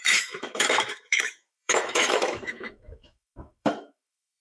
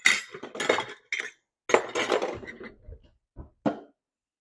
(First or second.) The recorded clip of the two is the second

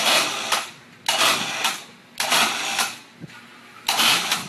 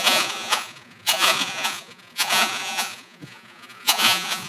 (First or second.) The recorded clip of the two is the first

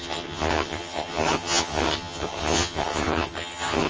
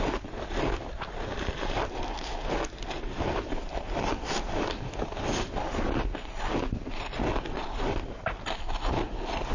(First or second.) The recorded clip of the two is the second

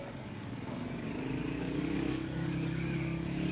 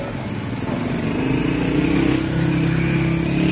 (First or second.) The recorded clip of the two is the second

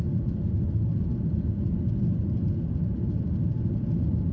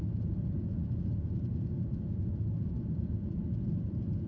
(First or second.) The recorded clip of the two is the first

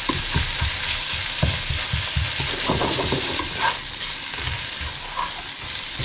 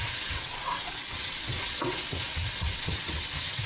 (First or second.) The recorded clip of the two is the first